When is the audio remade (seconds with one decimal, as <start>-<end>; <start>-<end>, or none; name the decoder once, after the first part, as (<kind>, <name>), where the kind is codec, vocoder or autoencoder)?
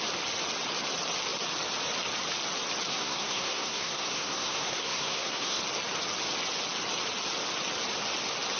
2.9-5.6 (codec, SNAC)